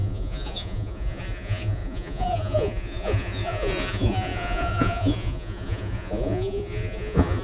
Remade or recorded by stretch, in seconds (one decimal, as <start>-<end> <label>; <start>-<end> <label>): 0.0-7.4 remade